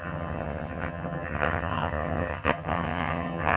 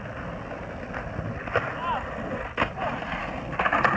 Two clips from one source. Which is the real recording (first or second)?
second